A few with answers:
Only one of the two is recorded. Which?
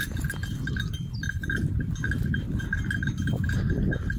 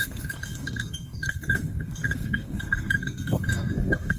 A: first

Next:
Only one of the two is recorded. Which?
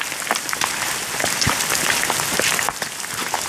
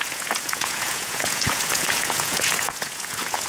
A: first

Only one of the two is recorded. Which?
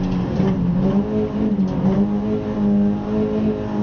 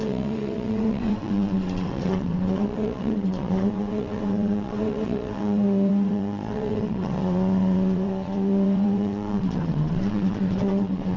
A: first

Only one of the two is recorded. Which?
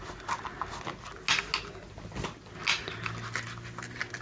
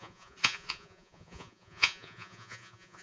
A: first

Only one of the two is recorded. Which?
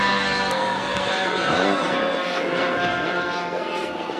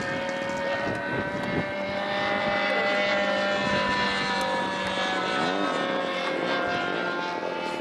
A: second